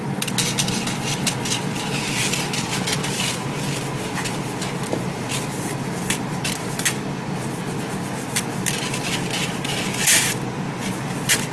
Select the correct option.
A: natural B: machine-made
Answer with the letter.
A